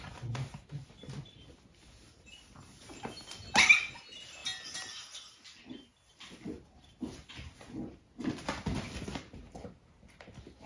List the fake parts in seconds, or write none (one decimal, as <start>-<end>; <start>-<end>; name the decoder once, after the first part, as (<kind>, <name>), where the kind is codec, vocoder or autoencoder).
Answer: none